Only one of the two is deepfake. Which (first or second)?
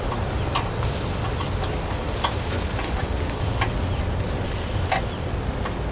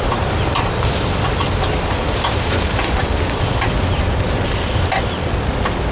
second